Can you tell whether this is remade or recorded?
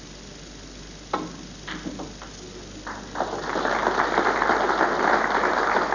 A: recorded